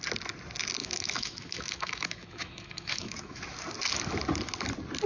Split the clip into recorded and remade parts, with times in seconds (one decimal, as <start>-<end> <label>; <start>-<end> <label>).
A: 0.0-0.8 recorded; 0.8-3.4 remade; 3.4-5.1 recorded